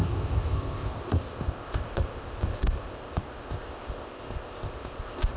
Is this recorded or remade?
remade